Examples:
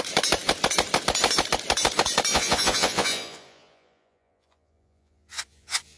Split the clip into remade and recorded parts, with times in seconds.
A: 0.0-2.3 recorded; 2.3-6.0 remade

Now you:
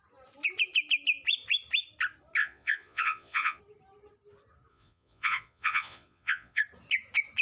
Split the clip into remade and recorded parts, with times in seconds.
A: 0.0-2.4 recorded; 2.4-3.6 remade; 3.6-4.7 recorded; 4.7-6.6 remade; 6.6-7.4 recorded

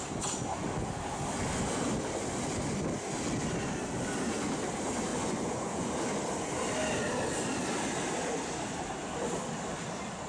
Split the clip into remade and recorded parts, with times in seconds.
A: 0.0-5.1 recorded; 5.1-5.9 remade; 5.9-10.3 recorded

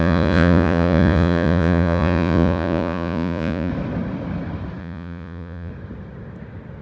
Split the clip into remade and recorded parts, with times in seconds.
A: 0.0-3.7 remade; 3.7-4.8 recorded; 4.8-5.7 remade; 5.7-6.8 recorded

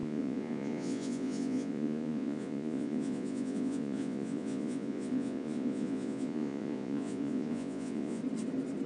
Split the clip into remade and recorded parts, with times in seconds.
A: 0.0-8.2 remade; 8.2-8.9 recorded

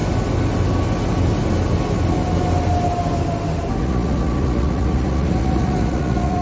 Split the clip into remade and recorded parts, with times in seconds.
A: 0.0-3.8 recorded; 3.8-6.4 remade